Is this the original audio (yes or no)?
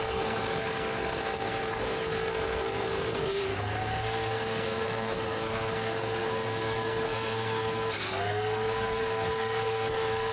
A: no